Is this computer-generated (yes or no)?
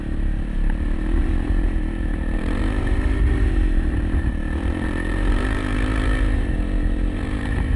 yes